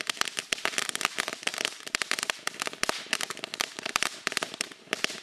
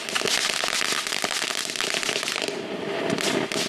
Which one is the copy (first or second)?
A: first